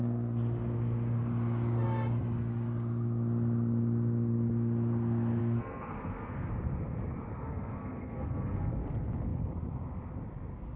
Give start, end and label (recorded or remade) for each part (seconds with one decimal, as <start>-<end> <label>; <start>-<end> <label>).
0.0-5.4 recorded; 5.4-6.5 remade; 6.5-7.3 recorded; 7.3-8.8 remade; 8.8-10.8 recorded